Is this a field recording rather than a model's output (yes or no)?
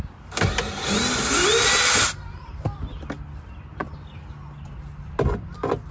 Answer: yes